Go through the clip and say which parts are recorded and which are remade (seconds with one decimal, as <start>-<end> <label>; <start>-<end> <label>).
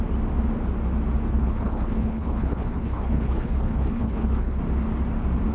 0.0-1.3 recorded; 1.3-4.6 remade; 4.6-5.5 recorded